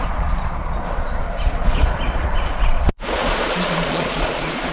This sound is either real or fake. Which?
fake